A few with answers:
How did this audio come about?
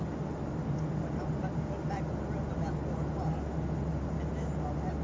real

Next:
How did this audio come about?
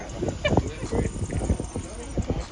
real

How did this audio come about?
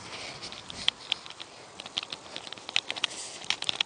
real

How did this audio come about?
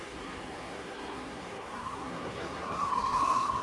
fake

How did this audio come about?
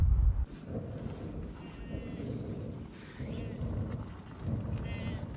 real